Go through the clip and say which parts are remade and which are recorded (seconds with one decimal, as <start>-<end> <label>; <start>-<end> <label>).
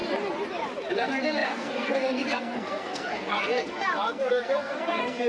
0.0-0.9 recorded; 0.9-5.3 remade